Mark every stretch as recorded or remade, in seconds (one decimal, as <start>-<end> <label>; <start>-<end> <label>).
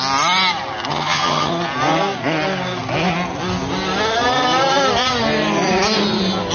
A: 0.0-0.9 recorded; 0.9-1.5 remade; 1.5-6.5 recorded